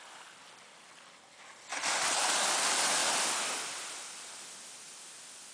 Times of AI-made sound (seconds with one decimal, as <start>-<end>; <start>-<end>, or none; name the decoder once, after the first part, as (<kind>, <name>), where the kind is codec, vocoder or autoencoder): none